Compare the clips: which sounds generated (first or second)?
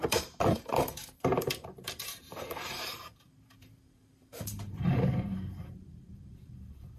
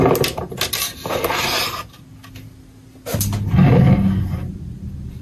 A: first